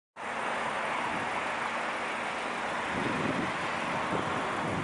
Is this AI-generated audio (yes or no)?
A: no